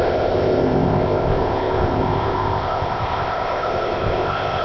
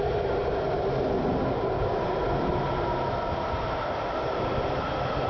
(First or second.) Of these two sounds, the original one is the second